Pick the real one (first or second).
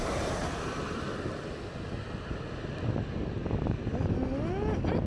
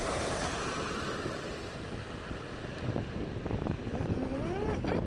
first